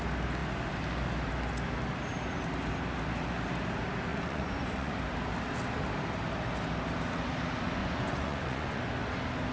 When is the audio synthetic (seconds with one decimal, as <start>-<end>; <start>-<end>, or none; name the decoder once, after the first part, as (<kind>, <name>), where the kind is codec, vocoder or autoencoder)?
4.1-4.9 (vocoder, Vocos); 7.8-8.8